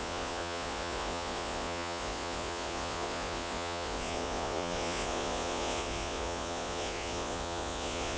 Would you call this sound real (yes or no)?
no